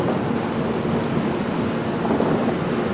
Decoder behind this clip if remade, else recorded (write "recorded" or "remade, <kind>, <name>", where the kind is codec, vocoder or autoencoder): recorded